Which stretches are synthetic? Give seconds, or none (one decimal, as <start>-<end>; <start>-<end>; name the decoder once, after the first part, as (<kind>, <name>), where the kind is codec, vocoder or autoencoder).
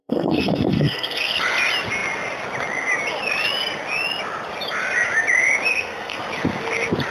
0.0-1.4 (codec, SNAC); 5.7-6.2